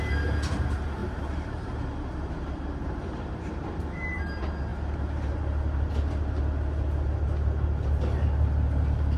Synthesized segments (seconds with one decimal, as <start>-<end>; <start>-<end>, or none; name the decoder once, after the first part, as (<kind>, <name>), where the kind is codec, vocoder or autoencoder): 1.0-4.2 (vocoder, BigVGAN v2)